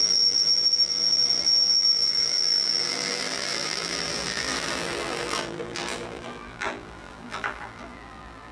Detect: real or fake fake